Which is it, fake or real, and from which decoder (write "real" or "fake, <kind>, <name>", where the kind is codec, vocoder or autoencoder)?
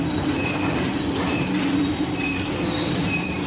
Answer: real